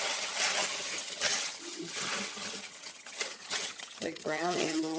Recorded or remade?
remade